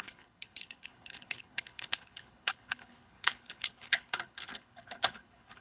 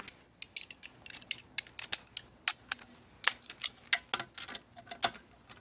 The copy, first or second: first